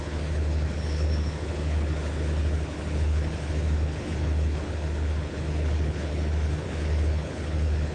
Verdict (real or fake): fake